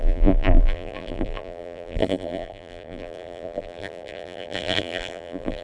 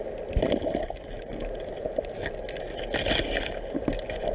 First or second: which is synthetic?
first